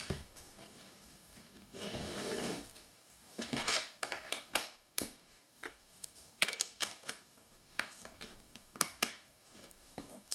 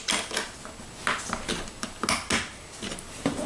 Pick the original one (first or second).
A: second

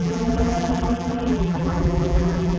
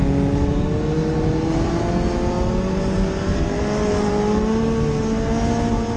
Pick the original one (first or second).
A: second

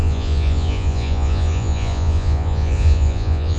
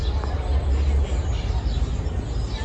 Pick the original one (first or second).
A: second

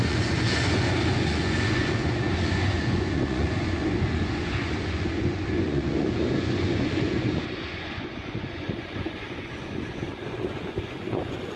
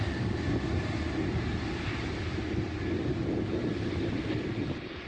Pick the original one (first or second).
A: second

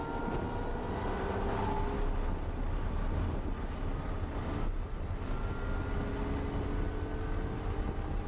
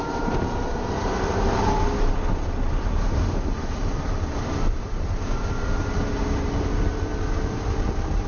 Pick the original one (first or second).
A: first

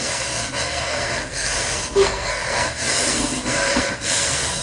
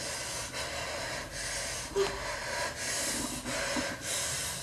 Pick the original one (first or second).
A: second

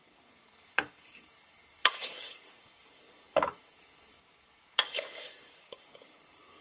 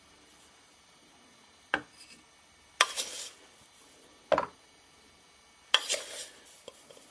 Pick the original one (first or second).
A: second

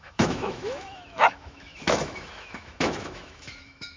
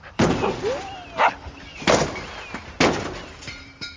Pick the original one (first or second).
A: second